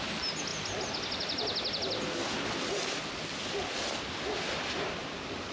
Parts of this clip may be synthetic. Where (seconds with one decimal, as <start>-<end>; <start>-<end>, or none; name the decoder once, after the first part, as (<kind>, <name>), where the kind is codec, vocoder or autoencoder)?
none